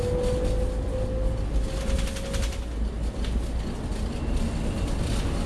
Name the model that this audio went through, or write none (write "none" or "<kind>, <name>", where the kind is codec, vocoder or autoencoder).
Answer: none